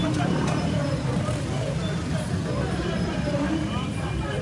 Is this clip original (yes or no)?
no